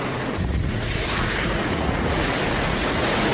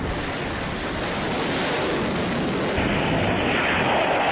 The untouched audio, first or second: second